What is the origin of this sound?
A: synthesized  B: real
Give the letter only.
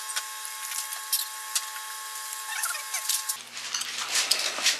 B